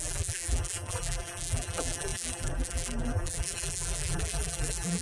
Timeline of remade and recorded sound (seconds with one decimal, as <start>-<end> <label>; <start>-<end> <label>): 0.0-5.0 remade